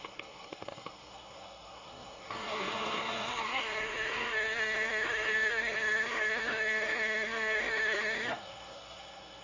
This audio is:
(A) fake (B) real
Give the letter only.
A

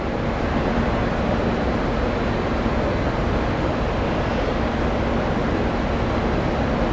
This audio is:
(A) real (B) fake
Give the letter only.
A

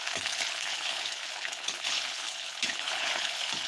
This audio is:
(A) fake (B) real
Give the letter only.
A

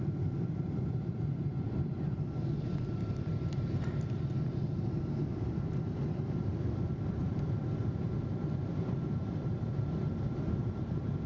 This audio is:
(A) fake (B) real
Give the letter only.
A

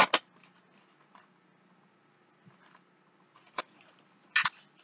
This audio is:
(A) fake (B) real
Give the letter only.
B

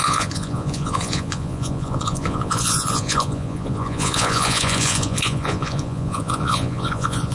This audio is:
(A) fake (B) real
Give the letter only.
A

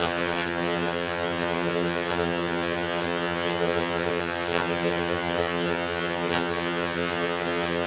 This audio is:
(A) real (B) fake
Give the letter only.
B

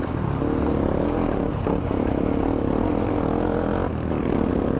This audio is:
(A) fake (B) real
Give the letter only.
B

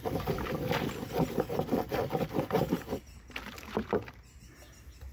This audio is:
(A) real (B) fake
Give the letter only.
A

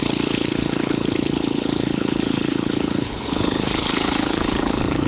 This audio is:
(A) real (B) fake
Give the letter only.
B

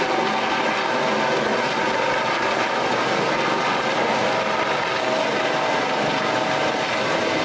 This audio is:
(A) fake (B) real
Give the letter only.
B